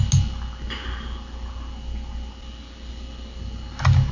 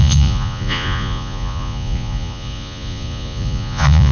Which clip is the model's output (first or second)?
second